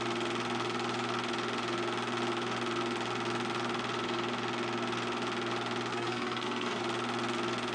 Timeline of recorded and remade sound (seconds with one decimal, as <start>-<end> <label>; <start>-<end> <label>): 0.0-5.9 recorded; 5.9-6.8 remade; 6.8-7.7 recorded